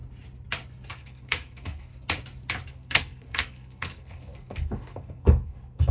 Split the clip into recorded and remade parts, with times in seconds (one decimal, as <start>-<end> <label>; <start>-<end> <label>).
0.0-0.9 recorded; 0.9-1.9 remade; 1.9-2.7 recorded; 2.7-5.9 remade